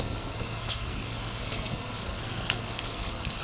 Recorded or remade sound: remade